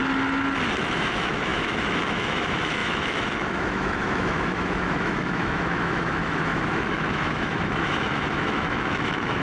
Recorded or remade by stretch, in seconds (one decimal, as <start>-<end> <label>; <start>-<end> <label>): 0.0-0.8 recorded; 0.8-9.4 remade

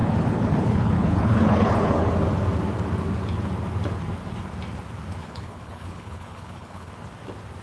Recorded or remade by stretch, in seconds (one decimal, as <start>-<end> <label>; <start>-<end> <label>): 0.0-2.1 remade; 2.1-5.2 recorded; 5.2-6.9 remade; 6.9-7.6 recorded

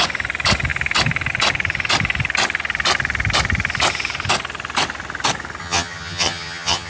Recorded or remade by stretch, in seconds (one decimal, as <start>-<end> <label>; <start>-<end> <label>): 0.0-5.6 recorded; 5.6-6.9 remade

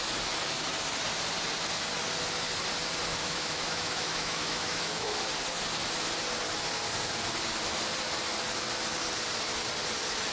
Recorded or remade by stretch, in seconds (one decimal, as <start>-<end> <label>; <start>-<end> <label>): 0.0-3.1 recorded; 3.1-5.2 remade; 5.2-10.3 recorded

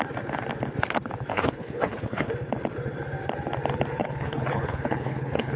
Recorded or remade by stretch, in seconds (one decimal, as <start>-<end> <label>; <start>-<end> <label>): 0.0-1.3 recorded; 1.3-2.3 remade; 2.3-4.0 recorded; 4.0-5.6 remade

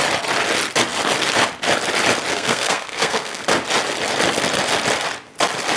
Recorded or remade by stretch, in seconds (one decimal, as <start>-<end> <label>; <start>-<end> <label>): 0.0-2.3 recorded; 2.3-3.4 remade; 3.4-5.8 recorded